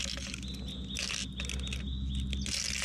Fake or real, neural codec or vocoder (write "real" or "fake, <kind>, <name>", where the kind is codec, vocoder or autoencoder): real